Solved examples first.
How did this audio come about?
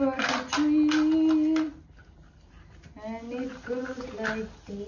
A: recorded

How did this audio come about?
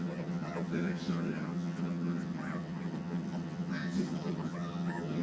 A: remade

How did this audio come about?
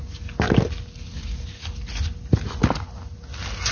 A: recorded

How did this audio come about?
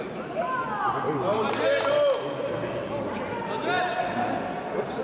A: recorded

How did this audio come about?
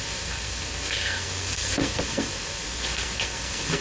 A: remade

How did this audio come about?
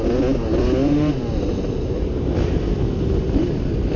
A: recorded